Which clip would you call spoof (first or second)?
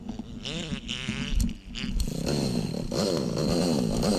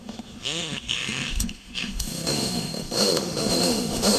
second